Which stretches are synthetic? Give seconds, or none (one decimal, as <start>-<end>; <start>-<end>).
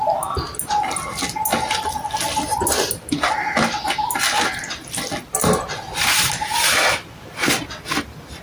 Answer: none